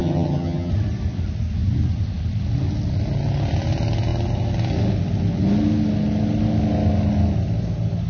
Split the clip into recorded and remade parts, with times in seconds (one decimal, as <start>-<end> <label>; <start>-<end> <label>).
0.0-0.7 remade; 0.7-8.1 recorded